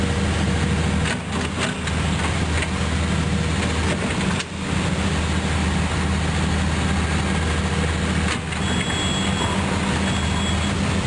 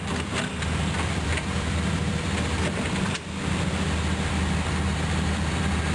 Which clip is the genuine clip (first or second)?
first